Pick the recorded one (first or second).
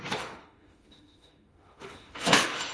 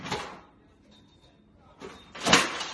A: second